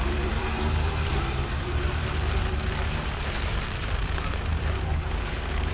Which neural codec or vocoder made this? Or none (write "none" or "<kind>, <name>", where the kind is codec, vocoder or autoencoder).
vocoder, BigVGAN v2